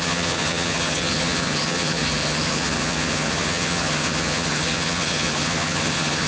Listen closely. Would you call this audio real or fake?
fake